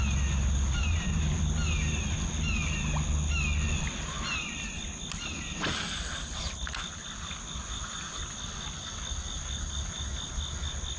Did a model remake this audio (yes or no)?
no